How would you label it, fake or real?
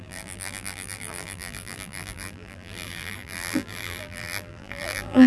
fake